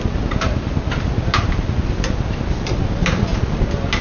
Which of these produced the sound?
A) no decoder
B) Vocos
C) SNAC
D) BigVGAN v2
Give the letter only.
A